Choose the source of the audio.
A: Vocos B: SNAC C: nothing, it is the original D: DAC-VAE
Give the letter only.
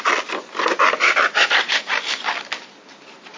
C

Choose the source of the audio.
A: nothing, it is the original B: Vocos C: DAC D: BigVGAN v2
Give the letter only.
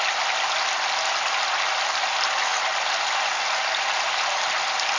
A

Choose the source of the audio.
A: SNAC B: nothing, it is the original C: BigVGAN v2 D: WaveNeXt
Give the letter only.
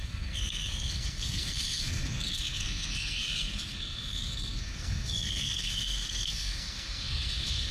A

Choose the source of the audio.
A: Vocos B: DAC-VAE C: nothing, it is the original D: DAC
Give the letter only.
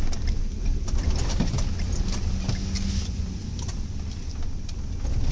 C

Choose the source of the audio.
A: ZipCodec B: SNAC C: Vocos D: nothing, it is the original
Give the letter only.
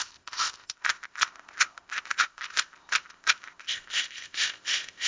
A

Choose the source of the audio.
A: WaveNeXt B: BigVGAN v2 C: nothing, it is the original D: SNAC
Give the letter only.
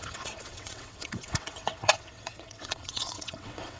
A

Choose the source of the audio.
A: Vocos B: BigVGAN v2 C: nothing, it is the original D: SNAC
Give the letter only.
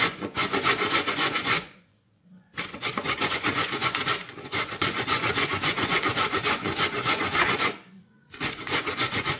A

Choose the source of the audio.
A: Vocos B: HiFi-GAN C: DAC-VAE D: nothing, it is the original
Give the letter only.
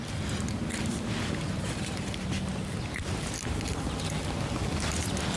D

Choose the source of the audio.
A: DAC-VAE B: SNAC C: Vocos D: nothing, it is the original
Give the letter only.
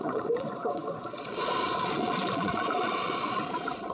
C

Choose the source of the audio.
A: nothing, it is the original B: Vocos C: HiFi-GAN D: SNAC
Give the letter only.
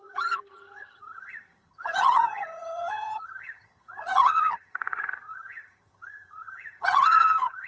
C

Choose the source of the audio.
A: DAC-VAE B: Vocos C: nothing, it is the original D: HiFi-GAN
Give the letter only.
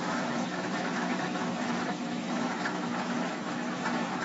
A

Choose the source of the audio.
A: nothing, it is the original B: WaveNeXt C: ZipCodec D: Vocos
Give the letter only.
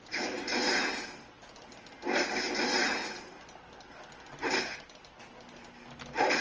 A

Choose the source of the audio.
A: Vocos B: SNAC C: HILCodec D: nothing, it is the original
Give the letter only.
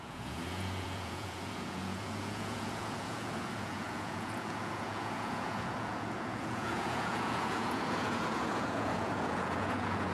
A